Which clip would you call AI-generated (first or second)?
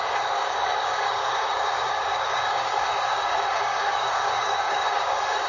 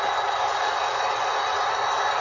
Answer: first